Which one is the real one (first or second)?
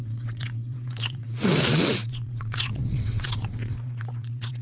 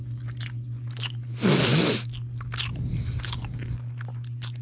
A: second